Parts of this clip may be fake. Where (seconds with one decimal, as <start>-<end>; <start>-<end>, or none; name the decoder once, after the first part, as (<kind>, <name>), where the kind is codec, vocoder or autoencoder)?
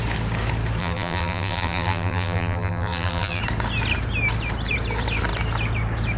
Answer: 0.8-3.4 (vocoder, BigVGAN v2)